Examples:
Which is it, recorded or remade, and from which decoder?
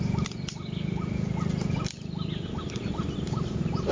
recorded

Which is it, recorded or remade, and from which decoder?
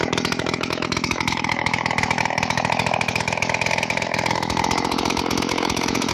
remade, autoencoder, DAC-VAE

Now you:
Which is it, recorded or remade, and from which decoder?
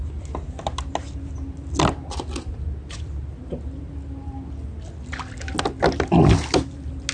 recorded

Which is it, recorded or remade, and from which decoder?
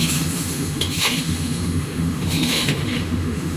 remade, autoencoder, DAC-VAE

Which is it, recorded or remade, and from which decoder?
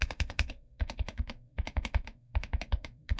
remade, autoencoder, DAC-VAE